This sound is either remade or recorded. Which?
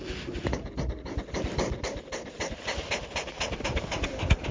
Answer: recorded